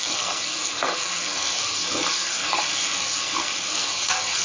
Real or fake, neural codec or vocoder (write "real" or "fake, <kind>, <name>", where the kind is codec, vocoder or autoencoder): fake, codec, SNAC